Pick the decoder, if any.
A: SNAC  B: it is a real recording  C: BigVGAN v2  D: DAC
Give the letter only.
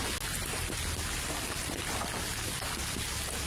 B